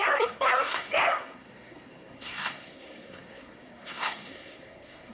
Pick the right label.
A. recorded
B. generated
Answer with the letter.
B